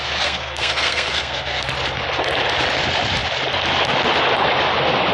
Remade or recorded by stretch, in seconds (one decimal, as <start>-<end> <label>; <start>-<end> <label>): 0.0-1.6 remade; 1.6-5.1 recorded